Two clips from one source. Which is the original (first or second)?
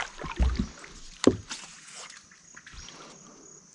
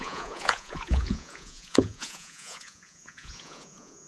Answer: first